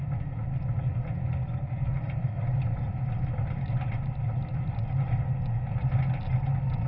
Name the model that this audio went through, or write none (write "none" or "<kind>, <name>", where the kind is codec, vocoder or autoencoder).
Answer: none